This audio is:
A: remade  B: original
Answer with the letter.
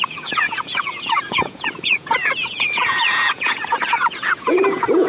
A